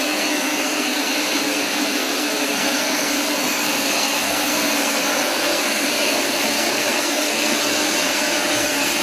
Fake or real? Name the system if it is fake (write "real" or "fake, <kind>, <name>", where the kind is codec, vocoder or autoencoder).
fake, codec, SNAC